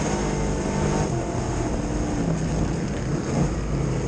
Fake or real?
real